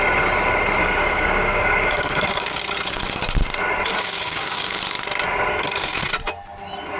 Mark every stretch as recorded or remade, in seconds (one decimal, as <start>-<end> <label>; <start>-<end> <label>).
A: 0.0-0.8 recorded; 0.8-2.6 remade; 2.6-3.9 recorded; 3.9-4.8 remade; 4.8-7.0 recorded